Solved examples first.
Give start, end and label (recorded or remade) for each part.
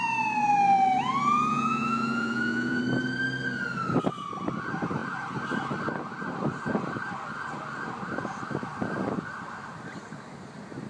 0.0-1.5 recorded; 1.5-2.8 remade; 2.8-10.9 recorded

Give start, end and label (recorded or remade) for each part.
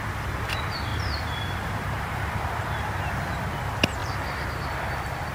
0.0-0.9 recorded; 0.9-3.0 remade; 3.0-4.0 recorded; 4.0-4.5 remade; 4.5-5.3 recorded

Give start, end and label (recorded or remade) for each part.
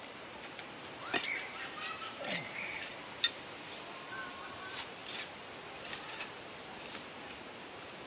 0.0-2.9 remade; 2.9-4.3 recorded; 4.3-5.0 remade; 5.0-5.8 recorded; 5.8-8.1 remade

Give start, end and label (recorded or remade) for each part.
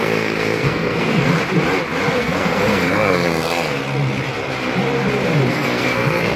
0.0-1.3 remade; 1.3-2.1 recorded; 2.1-3.8 remade; 3.8-5.5 recorded; 5.5-6.4 remade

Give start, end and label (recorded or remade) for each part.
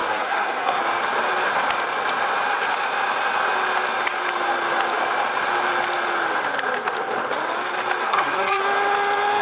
0.0-0.8 remade; 0.8-8.0 recorded; 8.0-8.6 remade; 8.6-9.4 recorded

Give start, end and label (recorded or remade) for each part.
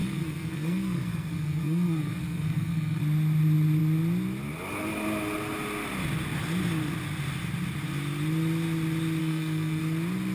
0.0-3.0 remade; 3.0-9.2 recorded; 9.2-9.8 remade; 9.8-10.3 recorded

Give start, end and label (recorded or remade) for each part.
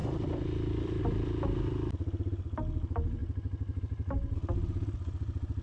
0.0-1.0 remade; 1.0-5.6 recorded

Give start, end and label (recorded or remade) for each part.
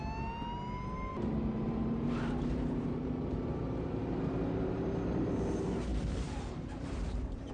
0.0-1.1 recorded; 1.1-5.3 remade; 5.3-5.9 recorded; 5.9-7.5 remade